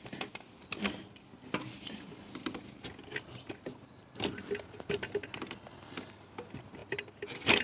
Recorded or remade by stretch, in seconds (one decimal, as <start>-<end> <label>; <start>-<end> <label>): 0.0-7.6 recorded